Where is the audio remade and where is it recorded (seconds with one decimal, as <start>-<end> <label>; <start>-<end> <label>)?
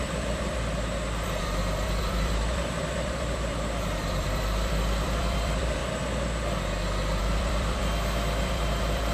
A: 0.0-5.8 remade; 5.8-7.2 recorded; 7.2-7.8 remade; 7.8-8.4 recorded; 8.4-9.1 remade